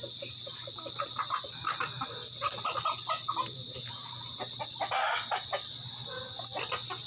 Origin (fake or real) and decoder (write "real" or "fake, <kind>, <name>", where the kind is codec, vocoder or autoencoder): real